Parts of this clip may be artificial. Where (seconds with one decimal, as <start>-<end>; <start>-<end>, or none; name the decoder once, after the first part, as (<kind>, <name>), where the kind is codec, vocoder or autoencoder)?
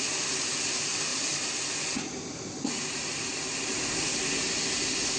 none